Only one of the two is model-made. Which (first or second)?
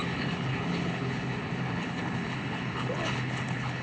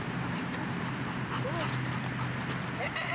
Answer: first